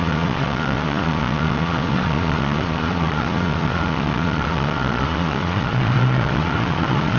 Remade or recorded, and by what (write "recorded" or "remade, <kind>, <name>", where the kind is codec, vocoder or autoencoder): remade, vocoder, Vocos